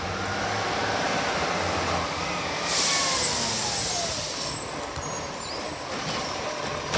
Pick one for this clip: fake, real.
real